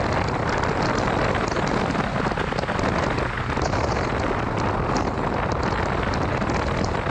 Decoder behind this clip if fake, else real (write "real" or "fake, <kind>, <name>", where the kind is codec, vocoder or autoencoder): real